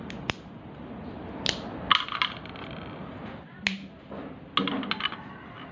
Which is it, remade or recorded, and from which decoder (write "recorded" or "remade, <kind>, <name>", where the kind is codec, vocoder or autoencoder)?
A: recorded